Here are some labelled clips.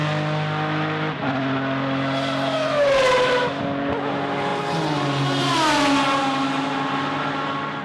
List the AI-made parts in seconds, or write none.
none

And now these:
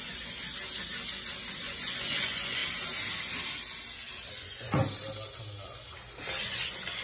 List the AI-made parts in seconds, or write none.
0.0-0.5; 1.6-2.6; 4.3-4.8; 6.4-7.0

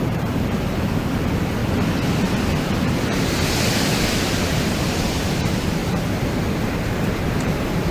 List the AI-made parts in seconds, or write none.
0.0-1.6; 4.8-5.8; 6.6-7.9

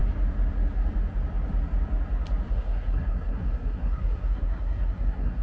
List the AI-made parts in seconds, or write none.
2.5-5.4

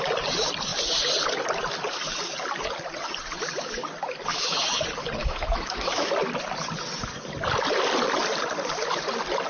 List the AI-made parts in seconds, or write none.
4.3-4.8; 5.2-6.1

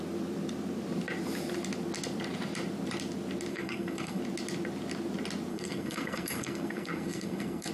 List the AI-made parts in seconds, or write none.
3.5-4.2; 5.5-7.7